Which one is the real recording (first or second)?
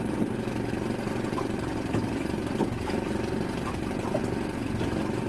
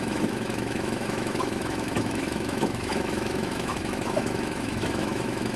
first